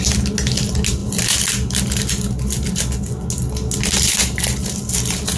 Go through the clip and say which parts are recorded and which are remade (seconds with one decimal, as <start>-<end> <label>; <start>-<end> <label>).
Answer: 0.0-5.4 recorded